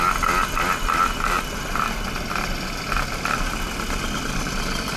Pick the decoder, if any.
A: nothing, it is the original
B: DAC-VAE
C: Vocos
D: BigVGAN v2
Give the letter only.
A